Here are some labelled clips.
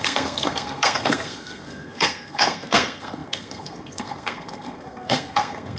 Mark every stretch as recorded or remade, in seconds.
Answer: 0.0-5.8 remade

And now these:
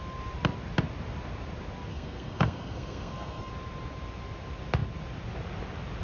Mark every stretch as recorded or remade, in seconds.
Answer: 0.0-1.9 recorded; 1.9-3.5 remade; 3.5-6.0 recorded

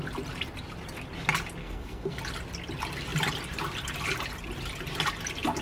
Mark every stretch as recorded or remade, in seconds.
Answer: 0.0-1.6 recorded; 1.6-2.2 remade; 2.2-5.6 recorded

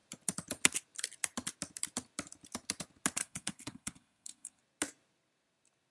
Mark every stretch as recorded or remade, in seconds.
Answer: 0.0-3.2 recorded; 3.2-4.6 remade; 4.6-5.9 recorded

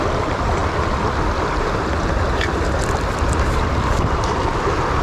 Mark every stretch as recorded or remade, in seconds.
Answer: 0.0-5.0 recorded